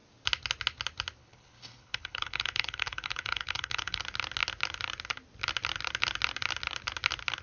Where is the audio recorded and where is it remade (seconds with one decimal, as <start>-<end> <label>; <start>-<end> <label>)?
0.0-1.2 recorded; 1.2-4.0 remade; 4.0-7.4 recorded